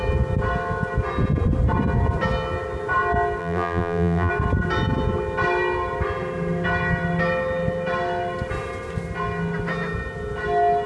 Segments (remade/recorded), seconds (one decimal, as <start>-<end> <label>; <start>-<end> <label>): 0.0-3.4 recorded; 3.4-4.3 remade; 4.3-10.9 recorded